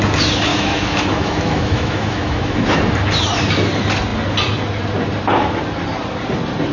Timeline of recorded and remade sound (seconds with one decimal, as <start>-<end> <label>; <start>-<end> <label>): 0.0-0.5 recorded; 0.5-2.8 remade; 2.8-6.7 recorded